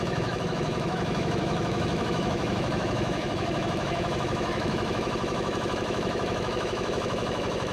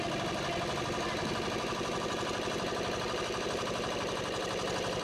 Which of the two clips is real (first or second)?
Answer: second